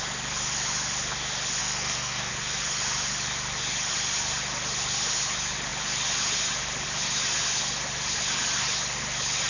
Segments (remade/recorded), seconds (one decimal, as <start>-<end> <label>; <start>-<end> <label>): 0.0-1.6 recorded; 1.6-2.3 remade; 2.3-9.5 recorded

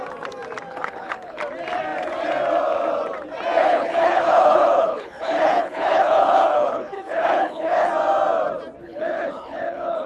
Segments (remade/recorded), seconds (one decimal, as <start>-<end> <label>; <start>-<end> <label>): 0.0-0.7 recorded; 0.7-1.4 remade; 1.4-3.6 recorded; 3.6-7.9 remade; 7.9-8.8 recorded; 8.8-10.1 remade

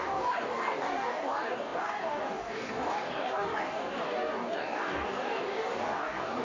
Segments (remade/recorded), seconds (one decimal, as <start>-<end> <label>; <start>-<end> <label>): 0.0-6.4 remade